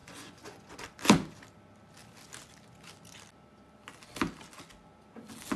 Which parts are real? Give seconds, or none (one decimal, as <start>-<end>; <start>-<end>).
0.8-5.6